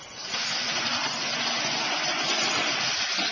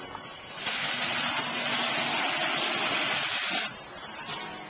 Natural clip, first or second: second